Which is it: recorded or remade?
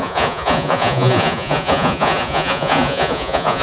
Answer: remade